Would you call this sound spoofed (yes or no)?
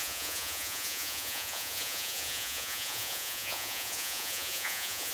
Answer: yes